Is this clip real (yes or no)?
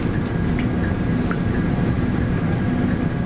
yes